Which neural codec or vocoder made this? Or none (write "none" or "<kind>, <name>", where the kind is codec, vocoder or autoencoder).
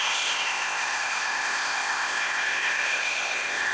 codec, ZipCodec